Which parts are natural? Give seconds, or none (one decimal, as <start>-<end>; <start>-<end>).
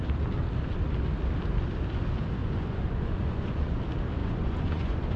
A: 0.0-2.4; 3.8-4.2